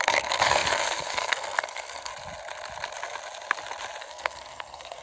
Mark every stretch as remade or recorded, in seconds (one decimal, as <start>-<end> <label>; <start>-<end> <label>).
0.0-2.1 remade; 2.1-4.0 recorded; 4.0-5.0 remade